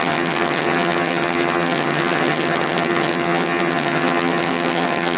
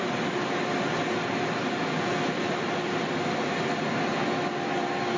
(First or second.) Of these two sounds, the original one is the second